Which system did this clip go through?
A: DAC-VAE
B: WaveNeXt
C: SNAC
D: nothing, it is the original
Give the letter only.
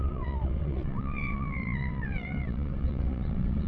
B